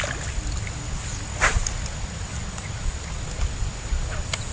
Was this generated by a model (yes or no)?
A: no